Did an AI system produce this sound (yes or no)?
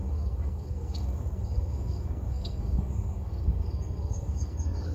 yes